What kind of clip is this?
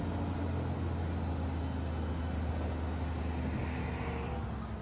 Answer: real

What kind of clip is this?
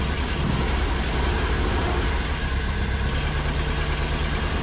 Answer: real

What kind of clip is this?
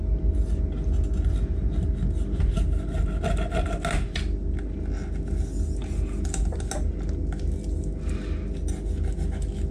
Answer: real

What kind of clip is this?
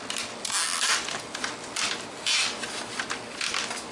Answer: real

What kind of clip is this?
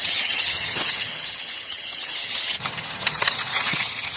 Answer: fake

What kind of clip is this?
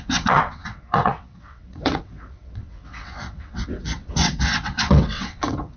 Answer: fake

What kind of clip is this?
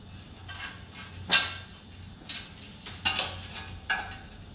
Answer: real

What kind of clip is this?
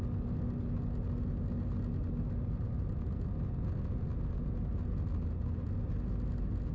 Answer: real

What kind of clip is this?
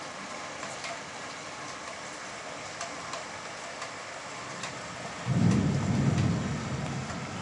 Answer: real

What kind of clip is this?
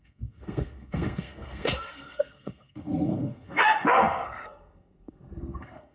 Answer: fake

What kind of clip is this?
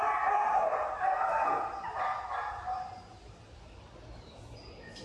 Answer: real